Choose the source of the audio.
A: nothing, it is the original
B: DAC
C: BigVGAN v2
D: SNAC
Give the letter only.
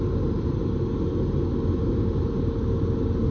A